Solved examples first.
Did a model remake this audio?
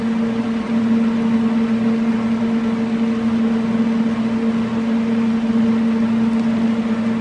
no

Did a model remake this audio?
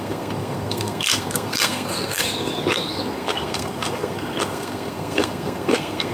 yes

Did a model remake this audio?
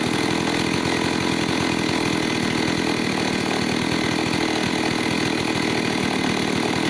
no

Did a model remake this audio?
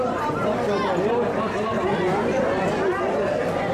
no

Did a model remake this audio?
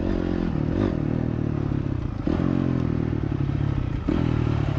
no